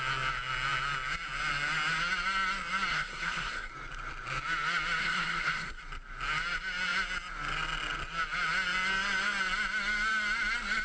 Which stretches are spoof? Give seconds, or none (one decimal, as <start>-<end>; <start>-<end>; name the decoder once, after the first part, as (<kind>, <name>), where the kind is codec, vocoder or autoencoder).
2.9-3.7 (codec, SNAC); 5.0-5.8